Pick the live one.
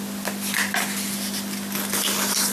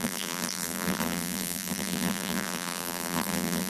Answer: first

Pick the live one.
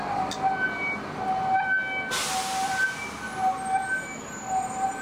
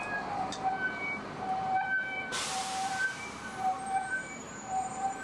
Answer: first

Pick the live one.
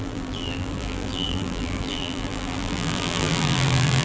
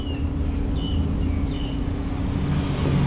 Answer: second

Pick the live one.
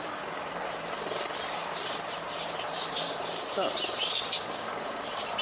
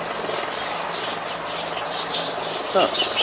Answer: second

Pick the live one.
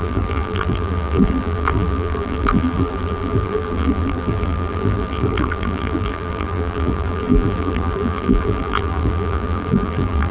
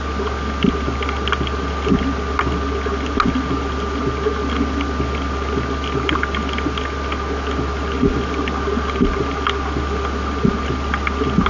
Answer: second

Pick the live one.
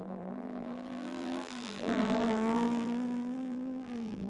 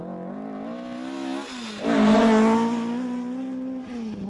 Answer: second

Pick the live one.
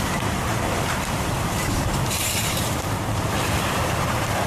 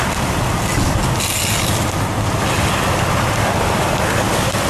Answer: second